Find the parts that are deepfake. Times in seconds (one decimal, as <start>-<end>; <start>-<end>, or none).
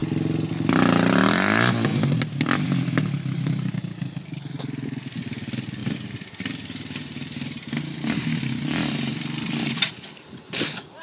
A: 5.8-9.9